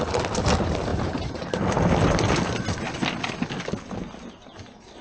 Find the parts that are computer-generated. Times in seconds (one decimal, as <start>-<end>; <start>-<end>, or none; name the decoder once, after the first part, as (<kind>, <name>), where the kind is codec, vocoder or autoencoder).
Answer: 0.9-1.5 (vocoder, BigVGAN v2)